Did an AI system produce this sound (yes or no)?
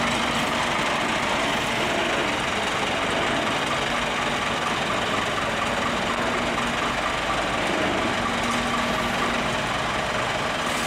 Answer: no